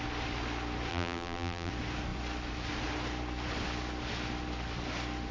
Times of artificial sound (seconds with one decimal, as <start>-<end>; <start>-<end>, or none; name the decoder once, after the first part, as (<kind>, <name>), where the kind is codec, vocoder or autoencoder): 0.9-1.7 (vocoder, BigVGAN v2)